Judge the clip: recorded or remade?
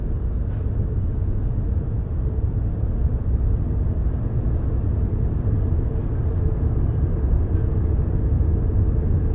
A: recorded